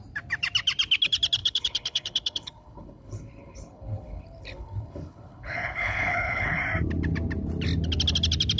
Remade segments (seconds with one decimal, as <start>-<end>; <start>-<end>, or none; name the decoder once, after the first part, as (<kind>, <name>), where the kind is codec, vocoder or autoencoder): 1.4-6.6 (codec, HILCodec)